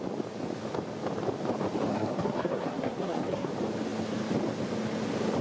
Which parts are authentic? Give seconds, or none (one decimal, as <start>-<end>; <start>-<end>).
0.0-1.9; 3.5-5.4